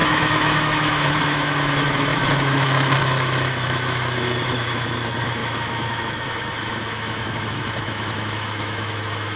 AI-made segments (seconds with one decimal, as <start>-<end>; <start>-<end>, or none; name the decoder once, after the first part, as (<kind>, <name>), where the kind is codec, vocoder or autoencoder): 0.0-9.4 (autoencoder, DAC-VAE)